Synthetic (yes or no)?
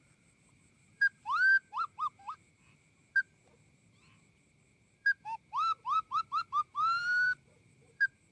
yes